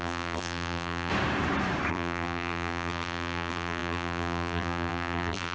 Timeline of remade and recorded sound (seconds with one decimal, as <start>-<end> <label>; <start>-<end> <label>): 0.0-1.1 remade; 1.1-1.9 recorded; 1.9-5.5 remade